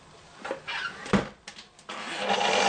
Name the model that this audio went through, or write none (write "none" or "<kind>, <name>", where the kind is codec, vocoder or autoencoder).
none